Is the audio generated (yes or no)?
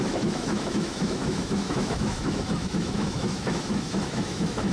yes